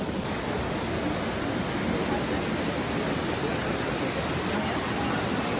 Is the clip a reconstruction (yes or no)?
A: no